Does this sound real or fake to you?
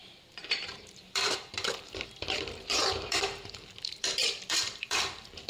fake